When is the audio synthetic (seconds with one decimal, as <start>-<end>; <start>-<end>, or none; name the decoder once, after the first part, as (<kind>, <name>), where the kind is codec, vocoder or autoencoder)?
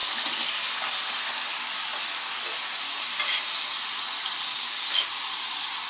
4.5-5.1 (codec, DAC)